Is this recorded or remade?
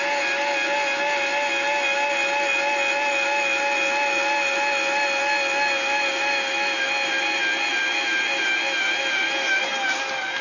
recorded